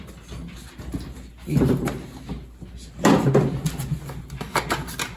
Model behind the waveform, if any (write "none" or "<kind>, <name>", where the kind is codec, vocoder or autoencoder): none